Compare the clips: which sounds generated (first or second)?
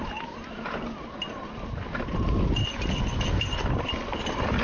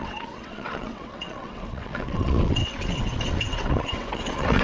second